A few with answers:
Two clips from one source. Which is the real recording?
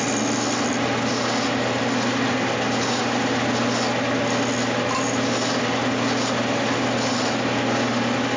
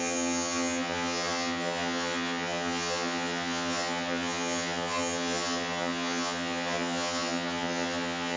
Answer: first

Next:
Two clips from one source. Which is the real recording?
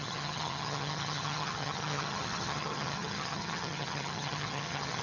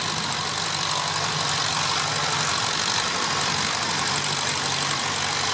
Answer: second